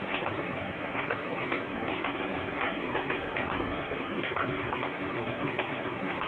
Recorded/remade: remade